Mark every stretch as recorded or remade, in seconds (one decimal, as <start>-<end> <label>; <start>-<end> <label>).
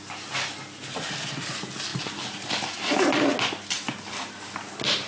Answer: 0.0-5.1 recorded